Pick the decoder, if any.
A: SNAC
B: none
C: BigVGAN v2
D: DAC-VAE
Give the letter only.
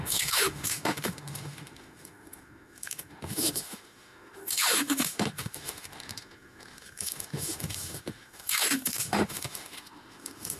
D